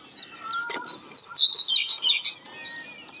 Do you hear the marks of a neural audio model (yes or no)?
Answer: no